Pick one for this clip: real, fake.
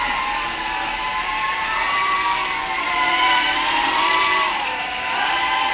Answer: fake